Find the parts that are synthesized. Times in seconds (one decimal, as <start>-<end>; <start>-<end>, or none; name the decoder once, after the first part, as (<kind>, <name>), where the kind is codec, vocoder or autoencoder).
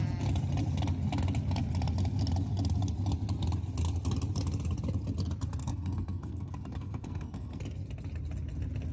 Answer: 5.6-7.6 (codec, SNAC)